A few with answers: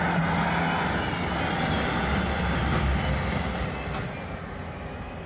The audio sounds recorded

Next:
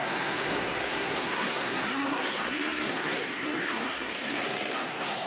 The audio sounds remade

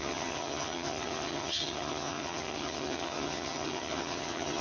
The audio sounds remade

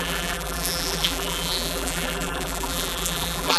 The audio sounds remade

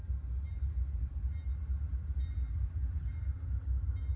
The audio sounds recorded